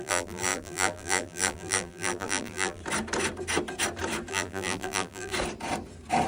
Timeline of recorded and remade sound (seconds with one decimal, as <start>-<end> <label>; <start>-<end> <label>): 0.0-2.8 remade; 2.8-4.3 recorded; 4.3-5.3 remade; 5.3-6.3 recorded